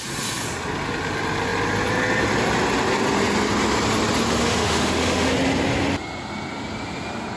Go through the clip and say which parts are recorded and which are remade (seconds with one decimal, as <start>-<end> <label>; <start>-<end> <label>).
0.0-4.4 recorded; 4.4-5.3 remade; 5.3-7.4 recorded